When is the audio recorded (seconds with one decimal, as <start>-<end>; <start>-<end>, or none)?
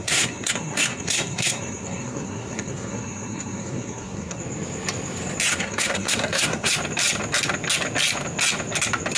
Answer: 4.4-5.5; 6.7-9.2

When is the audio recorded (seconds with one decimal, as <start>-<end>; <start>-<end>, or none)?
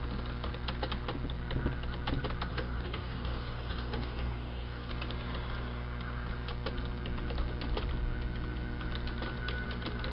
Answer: 0.0-2.5; 4.9-10.1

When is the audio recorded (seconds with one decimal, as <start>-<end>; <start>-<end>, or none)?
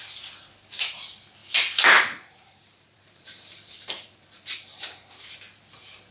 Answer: 0.0-1.4; 5.1-6.1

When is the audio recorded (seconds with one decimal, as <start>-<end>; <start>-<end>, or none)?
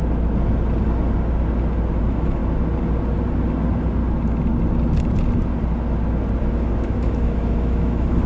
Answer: 0.0-2.0; 2.4-6.4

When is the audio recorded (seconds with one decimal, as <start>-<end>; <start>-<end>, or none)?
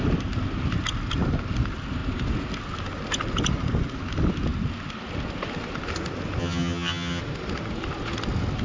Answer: 0.0-6.4; 7.2-8.6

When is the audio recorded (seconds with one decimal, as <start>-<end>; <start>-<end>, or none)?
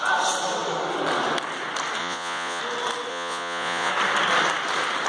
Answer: 0.0-2.0; 2.6-3.1; 3.9-5.1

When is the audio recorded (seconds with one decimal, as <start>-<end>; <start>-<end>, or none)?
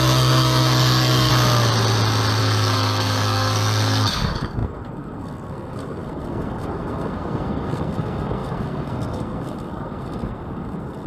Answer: 1.3-2.4